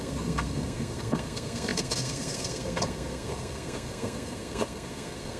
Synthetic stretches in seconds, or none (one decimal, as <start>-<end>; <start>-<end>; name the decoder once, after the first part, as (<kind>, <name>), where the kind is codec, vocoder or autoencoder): 0.0-5.4 (codec, SNAC)